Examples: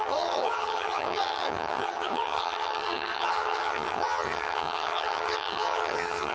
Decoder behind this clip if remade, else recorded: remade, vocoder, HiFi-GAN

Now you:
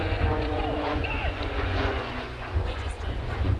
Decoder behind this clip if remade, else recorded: remade, vocoder, Vocos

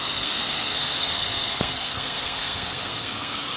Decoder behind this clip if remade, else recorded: remade, codec, SNAC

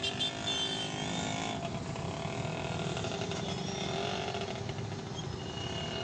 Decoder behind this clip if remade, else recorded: recorded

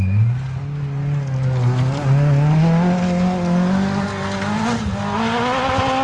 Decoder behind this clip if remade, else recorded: recorded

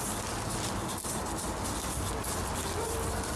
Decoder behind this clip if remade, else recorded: recorded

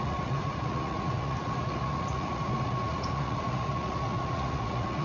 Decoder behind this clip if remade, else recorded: remade, vocoder, Vocos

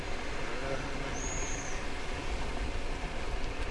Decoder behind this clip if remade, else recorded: recorded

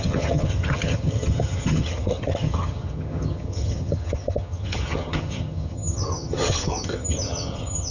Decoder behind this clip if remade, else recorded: remade, vocoder, HiFi-GAN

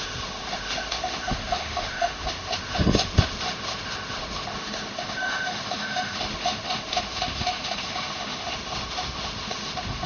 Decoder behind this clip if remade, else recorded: remade, autoencoder, DAC-VAE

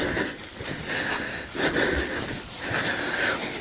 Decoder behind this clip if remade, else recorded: recorded